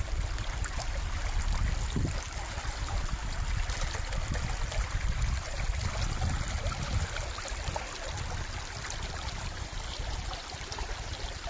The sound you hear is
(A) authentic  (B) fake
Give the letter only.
A